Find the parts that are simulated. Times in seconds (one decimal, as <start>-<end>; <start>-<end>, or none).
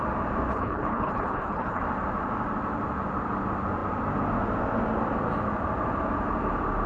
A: 0.5-1.8